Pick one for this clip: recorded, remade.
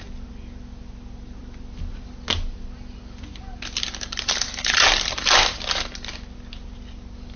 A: recorded